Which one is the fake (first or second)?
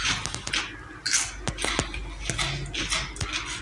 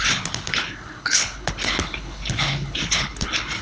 second